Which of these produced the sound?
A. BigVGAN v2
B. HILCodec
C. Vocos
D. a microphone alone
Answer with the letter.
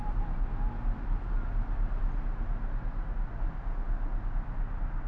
D